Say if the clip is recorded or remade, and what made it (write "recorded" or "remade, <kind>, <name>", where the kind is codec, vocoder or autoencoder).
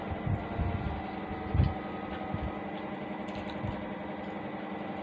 recorded